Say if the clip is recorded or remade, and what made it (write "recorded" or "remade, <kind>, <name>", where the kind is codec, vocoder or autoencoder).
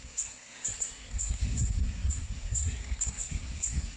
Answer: remade, codec, SNAC